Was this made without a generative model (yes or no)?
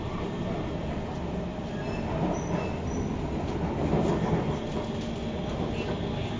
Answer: yes